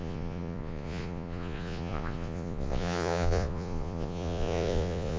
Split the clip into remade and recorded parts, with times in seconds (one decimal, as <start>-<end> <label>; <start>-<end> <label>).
0.0-5.2 remade